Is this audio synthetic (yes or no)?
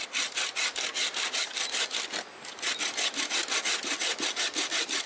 no